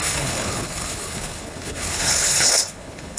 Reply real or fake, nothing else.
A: fake